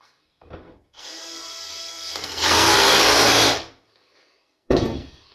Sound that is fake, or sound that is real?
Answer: fake